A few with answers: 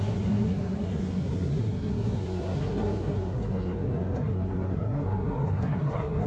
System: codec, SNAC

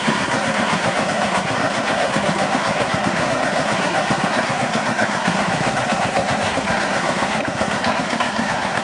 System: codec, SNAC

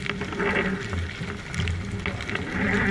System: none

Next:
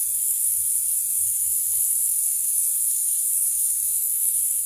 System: codec, SNAC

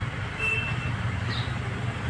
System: none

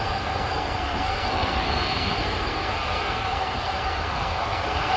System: codec, SNAC